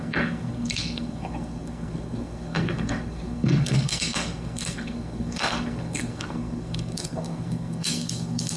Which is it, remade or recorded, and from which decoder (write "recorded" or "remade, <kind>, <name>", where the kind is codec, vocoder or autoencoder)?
remade, codec, SNAC